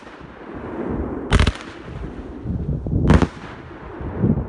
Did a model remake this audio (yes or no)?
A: no